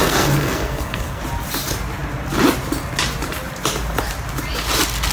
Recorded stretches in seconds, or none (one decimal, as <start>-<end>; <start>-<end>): 1.2-5.1

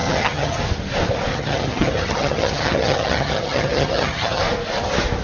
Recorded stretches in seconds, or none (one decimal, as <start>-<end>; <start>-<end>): 0.6-1.3; 4.4-5.2

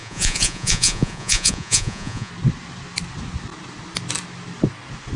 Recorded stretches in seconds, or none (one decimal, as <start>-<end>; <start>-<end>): 2.3-5.2

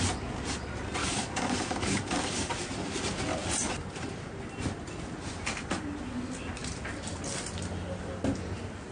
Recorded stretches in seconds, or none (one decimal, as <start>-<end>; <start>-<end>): 0.0-1.0; 2.5-8.9

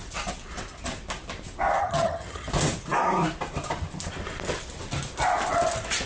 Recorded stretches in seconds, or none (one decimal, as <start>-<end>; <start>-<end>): 0.0-1.8; 2.5-6.1

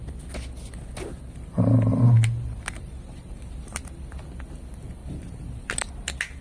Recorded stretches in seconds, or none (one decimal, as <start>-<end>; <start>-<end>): 0.0-1.1; 3.9-5.0; 5.9-6.4